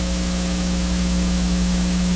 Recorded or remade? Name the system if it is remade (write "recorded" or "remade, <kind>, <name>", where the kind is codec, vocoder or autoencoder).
remade, autoencoder, DAC-VAE